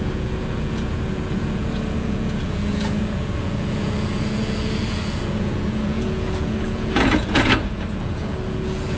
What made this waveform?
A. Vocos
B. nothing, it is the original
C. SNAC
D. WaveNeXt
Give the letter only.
A